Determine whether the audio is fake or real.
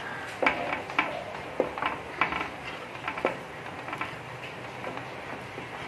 real